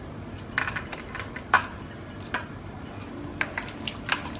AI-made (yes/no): no